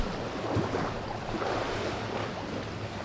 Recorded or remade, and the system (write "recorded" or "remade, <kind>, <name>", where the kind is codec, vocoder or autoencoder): recorded